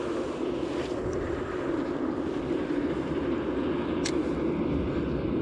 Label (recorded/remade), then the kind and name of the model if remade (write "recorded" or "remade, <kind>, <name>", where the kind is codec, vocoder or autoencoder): recorded